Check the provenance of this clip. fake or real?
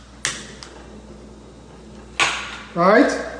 real